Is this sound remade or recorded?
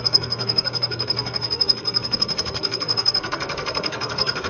remade